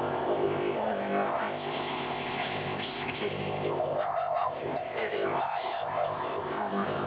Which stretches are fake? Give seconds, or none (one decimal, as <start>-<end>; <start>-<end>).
0.0-7.1